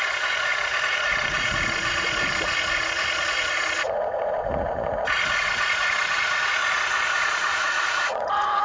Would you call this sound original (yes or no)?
no